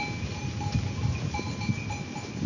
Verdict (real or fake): real